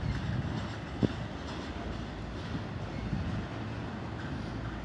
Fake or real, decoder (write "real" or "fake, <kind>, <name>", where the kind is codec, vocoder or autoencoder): real